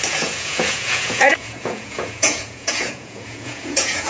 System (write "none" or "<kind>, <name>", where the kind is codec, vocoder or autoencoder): vocoder, Vocos